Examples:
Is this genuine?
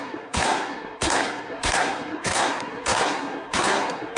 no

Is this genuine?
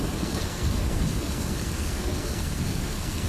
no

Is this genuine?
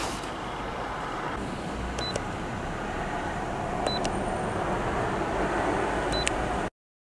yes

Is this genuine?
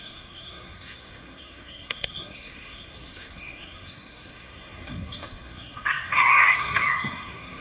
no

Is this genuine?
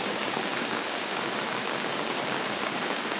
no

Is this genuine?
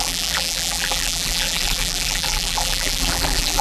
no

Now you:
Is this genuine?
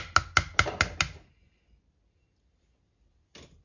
yes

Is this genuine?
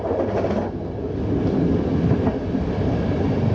yes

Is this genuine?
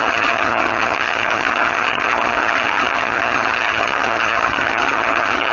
no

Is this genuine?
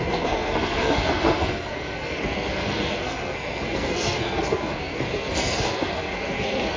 no